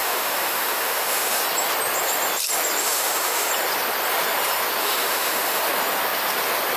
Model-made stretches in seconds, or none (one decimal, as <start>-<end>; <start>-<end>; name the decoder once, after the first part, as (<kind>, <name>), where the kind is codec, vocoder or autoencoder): 0.0-1.4 (autoencoder, DAC-VAE); 2.8-3.5; 4.8-5.6